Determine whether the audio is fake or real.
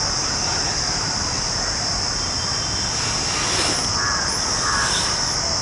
real